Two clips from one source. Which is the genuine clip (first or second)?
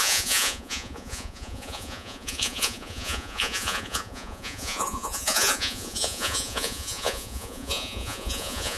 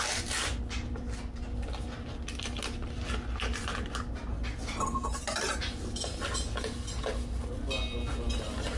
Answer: second